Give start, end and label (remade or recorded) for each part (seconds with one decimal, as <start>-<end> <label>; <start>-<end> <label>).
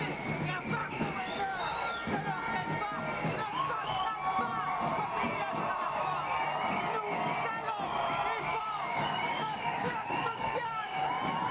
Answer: 0.0-0.8 recorded; 0.8-1.9 remade; 1.9-3.4 recorded; 3.4-4.0 remade; 4.0-8.5 recorded; 8.5-11.1 remade; 11.1-11.5 recorded